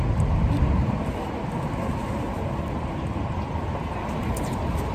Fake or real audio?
real